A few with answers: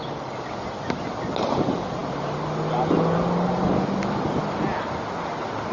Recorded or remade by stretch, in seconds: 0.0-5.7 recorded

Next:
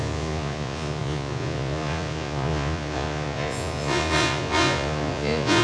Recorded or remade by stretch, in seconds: 0.0-5.6 remade

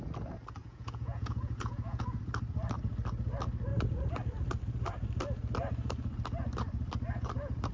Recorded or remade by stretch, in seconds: 0.0-0.6 recorded; 0.6-2.2 remade; 2.2-7.7 recorded

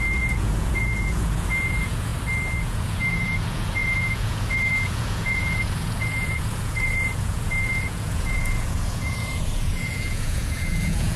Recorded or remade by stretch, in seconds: 0.0-2.1 remade; 2.1-2.6 recorded; 2.6-11.2 remade

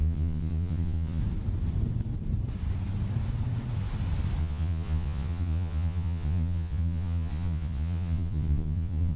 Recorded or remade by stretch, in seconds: 0.0-1.2 remade; 1.2-4.4 recorded; 4.4-9.2 remade